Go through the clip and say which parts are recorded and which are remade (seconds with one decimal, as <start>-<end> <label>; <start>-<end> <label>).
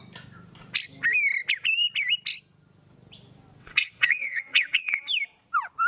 0.0-3.6 recorded; 3.6-5.1 remade; 5.1-5.9 recorded